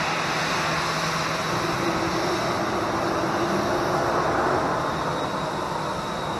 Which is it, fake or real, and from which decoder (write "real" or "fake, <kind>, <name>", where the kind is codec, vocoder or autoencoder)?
real